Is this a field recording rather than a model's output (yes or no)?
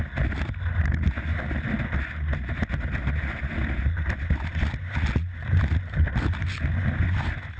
yes